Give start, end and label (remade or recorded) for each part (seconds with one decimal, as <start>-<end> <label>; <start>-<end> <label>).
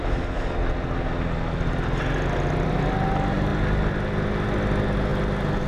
0.0-5.7 recorded